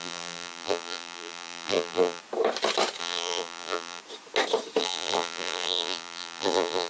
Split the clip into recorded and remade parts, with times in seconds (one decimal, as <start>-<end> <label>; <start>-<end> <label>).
0.0-2.2 remade; 2.2-3.0 recorded; 3.0-4.0 remade; 4.0-4.8 recorded; 4.8-6.9 remade